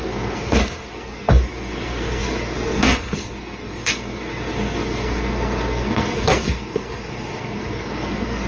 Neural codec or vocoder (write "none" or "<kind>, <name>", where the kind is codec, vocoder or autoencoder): codec, SNAC